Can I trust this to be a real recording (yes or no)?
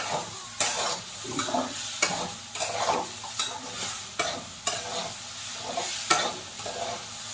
yes